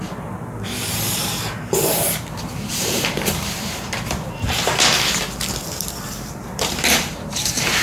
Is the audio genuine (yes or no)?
no